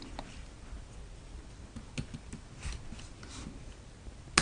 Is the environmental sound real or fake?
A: real